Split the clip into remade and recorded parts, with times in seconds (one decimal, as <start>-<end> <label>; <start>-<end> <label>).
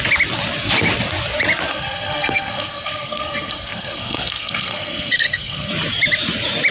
0.0-1.7 recorded; 1.7-5.7 remade; 5.7-6.7 recorded